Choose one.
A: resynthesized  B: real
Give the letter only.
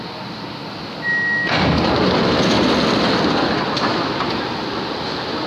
B